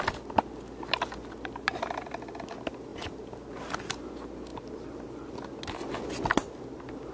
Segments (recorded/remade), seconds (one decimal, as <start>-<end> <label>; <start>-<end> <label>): 0.0-4.5 recorded; 4.5-5.3 remade; 5.3-7.1 recorded